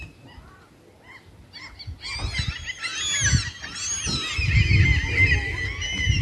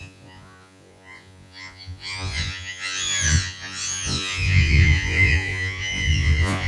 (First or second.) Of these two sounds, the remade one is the second